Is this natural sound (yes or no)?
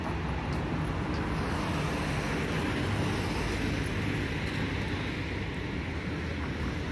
yes